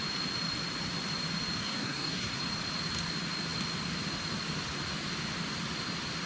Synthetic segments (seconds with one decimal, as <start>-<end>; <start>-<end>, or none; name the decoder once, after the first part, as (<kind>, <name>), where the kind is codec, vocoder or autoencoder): 1.6-2.4 (codec, SNAC)